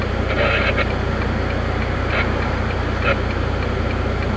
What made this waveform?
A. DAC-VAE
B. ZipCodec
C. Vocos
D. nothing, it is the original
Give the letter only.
D